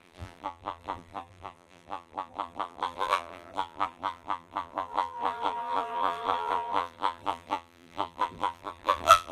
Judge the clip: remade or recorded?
remade